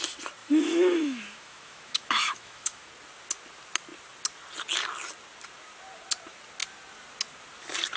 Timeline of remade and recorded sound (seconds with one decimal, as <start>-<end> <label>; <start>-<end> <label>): 0.0-0.4 recorded; 0.4-2.9 remade; 2.9-8.0 recorded